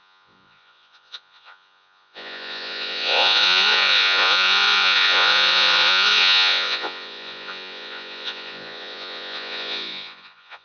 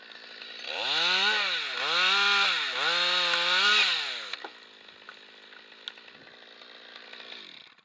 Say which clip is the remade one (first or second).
first